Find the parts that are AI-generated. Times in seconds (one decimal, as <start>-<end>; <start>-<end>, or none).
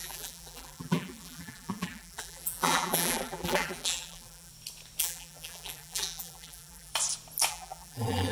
0.0-4.5; 5.0-6.9; 7.5-8.3